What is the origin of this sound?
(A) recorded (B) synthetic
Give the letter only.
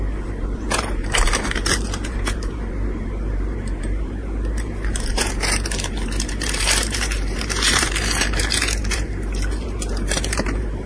B